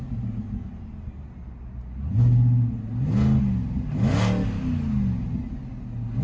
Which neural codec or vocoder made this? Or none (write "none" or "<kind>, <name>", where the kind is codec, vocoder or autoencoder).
none